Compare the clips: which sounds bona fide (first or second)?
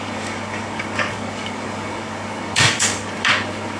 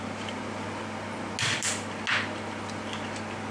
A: second